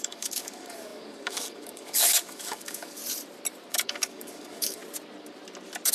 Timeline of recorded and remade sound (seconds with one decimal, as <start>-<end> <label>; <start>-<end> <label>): 0.0-3.0 remade; 3.0-3.7 recorded; 3.7-4.8 remade; 4.8-5.9 recorded